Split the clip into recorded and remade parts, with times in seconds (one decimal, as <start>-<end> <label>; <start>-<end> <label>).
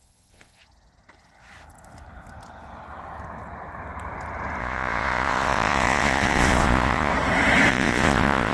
0.0-0.6 remade; 0.6-4.6 recorded; 4.6-7.1 remade; 7.1-7.7 recorded; 7.7-8.5 remade